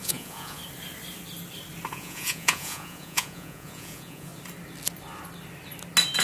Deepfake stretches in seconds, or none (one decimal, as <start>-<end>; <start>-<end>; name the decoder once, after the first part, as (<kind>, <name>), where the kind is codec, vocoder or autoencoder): 0.0-0.6 (vocoder, Vocos); 1.9-4.3

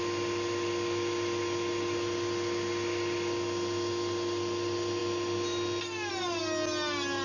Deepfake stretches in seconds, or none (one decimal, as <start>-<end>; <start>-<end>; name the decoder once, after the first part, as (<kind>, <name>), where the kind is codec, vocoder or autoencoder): none

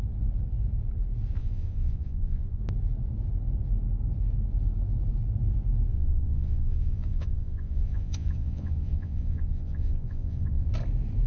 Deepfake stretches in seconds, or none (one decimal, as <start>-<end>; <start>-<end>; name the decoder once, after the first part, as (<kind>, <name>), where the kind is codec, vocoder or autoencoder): 1.4-2.6 (vocoder, Vocos); 5.9-10.7

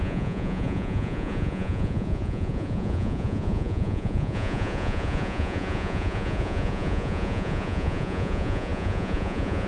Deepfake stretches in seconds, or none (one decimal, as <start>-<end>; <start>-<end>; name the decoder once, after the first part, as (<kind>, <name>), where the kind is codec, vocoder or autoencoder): 0.0-9.7 (vocoder, Vocos)

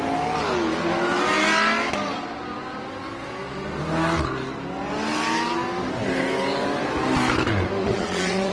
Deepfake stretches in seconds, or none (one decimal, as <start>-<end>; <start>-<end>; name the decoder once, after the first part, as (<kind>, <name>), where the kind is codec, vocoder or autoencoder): 7.8-8.5 (vocoder, Vocos)

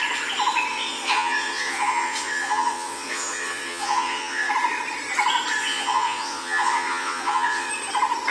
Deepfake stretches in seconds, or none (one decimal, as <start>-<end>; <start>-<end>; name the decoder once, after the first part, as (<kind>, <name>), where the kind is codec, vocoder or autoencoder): 0.7-4.5 (vocoder, Vocos); 5.6-7.7

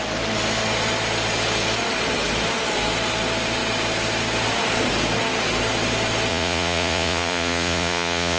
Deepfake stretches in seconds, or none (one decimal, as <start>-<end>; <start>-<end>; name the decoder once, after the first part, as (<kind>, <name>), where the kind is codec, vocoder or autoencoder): 6.3-8.4 (vocoder, Vocos)

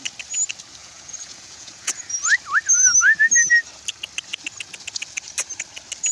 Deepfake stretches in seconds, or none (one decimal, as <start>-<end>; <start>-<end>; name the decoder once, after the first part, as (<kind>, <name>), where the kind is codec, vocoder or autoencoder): 0.8-1.9 (vocoder, Vocos)